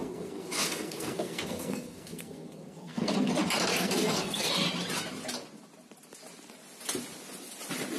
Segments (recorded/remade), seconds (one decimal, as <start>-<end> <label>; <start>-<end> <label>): 0.0-3.3 remade; 3.3-3.7 recorded; 3.7-4.5 remade; 4.5-8.0 recorded